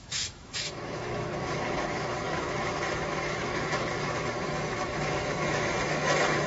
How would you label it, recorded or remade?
remade